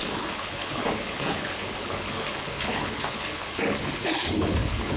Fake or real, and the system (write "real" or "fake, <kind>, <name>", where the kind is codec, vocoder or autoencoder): fake, codec, HILCodec